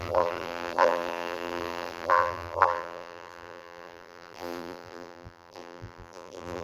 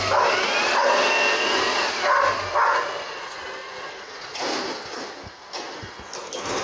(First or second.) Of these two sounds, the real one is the second